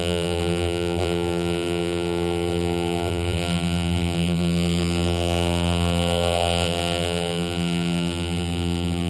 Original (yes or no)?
no